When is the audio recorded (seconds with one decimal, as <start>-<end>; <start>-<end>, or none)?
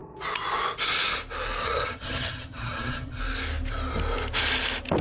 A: 0.0-1.6; 3.2-5.0